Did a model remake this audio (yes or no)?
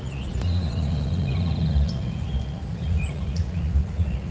yes